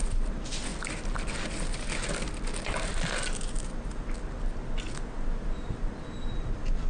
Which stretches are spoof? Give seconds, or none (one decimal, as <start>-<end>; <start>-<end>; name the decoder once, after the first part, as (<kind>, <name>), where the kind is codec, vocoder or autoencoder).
none